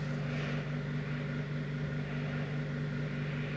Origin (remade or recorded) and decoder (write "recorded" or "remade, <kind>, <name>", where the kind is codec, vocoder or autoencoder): recorded